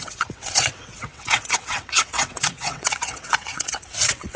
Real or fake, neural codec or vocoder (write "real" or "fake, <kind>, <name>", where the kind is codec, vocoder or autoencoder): fake, vocoder, WaveNeXt